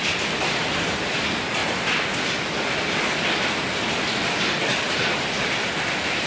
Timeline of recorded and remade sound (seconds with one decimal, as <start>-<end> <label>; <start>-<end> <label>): 0.0-6.3 recorded

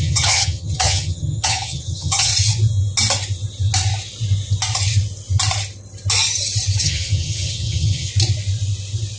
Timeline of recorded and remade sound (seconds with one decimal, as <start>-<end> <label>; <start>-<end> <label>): 0.0-2.3 remade; 2.3-6.8 recorded; 6.8-8.1 remade; 8.1-9.2 recorded

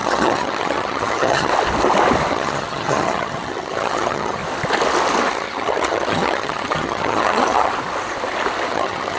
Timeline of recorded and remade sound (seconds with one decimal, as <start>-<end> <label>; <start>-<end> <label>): 0.0-1.5 remade; 1.5-2.3 recorded; 2.3-4.4 remade; 4.4-5.3 recorded; 5.3-7.7 remade; 7.7-8.7 recorded; 8.7-9.2 remade

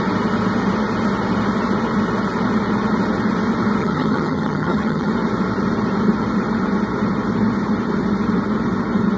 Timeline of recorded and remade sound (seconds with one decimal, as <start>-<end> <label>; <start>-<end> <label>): 0.0-3.8 recorded; 3.8-5.1 remade; 5.1-9.2 recorded

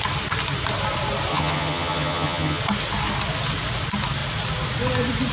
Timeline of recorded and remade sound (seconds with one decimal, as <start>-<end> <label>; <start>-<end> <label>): 0.0-1.3 recorded; 1.3-2.6 remade; 2.6-5.3 recorded